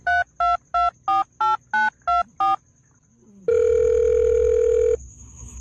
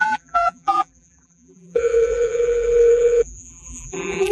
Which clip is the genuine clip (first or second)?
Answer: first